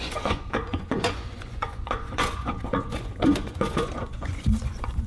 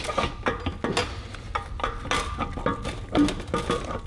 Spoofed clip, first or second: first